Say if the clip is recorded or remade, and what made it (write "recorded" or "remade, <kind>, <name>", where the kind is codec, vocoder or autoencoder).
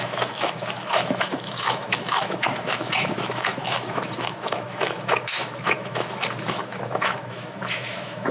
remade, autoencoder, DAC-VAE